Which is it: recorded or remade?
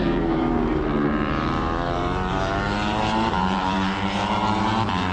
remade